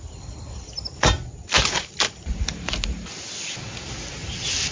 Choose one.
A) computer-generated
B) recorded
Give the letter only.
B